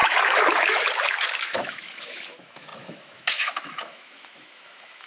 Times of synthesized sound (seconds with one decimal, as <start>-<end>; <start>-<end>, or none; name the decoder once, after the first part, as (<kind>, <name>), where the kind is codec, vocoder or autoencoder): 0.0-5.1 (autoencoder, DAC-VAE)